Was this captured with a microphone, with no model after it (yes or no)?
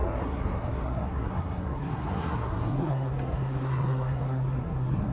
no